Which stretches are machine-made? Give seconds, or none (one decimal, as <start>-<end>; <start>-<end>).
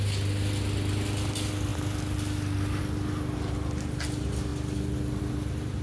none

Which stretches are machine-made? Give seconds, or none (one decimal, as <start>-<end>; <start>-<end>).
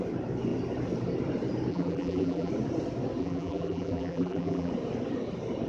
1.7-2.5; 3.2-4.7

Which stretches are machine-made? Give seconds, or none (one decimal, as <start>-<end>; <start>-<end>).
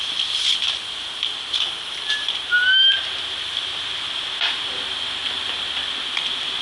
none